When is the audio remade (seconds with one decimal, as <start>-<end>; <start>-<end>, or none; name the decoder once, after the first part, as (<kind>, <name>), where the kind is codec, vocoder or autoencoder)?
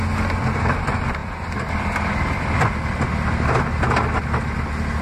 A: none